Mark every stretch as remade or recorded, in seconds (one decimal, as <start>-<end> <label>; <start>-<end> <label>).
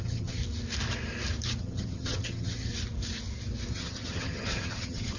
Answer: 0.0-0.4 remade; 0.4-1.6 recorded; 1.6-2.7 remade; 2.7-3.7 recorded; 3.7-5.2 remade